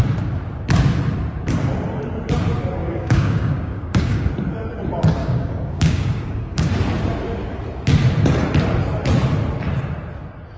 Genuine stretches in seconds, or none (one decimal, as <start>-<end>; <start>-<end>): 0.0-2.8; 4.3-5.2; 6.7-10.6